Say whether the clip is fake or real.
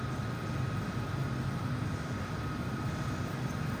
real